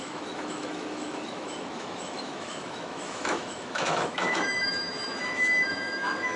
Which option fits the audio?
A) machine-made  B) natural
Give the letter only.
A